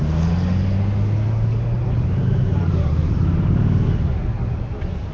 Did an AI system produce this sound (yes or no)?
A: no